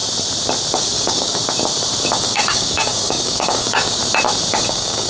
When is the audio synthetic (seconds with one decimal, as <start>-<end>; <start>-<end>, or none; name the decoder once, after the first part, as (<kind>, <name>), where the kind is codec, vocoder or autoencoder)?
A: 0.8-1.4 (codec, DAC); 2.2-4.0; 4.5-5.1